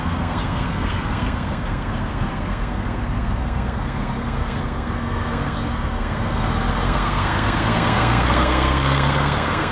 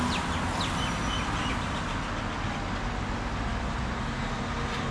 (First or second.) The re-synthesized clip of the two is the first